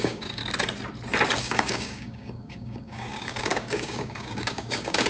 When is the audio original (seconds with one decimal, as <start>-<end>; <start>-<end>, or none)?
0.4-1.4